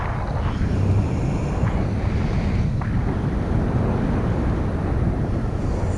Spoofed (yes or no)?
no